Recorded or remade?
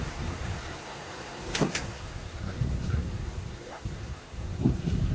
remade